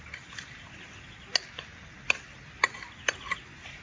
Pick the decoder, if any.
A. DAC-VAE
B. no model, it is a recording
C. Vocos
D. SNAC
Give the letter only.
B